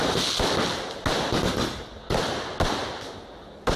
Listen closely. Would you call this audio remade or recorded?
recorded